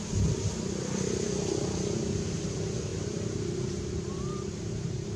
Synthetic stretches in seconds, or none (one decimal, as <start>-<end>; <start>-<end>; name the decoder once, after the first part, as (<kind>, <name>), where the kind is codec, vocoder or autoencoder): none